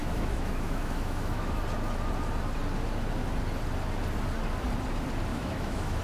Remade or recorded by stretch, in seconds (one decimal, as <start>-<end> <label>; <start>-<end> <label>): 0.0-1.6 remade; 1.6-5.3 recorded; 5.3-6.0 remade